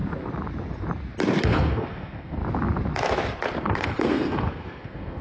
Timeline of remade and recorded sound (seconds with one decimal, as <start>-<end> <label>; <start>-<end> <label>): 0.0-1.4 recorded; 1.4-2.4 remade; 2.4-3.5 recorded; 3.5-5.2 remade